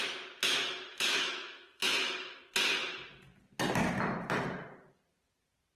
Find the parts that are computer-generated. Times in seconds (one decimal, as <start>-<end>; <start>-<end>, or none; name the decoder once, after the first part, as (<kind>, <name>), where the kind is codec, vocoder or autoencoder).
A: 0.9-2.4 (autoencoder, DAC-VAE)